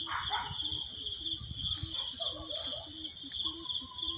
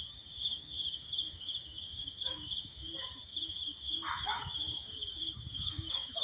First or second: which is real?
first